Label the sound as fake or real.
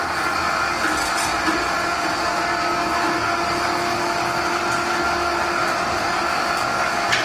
real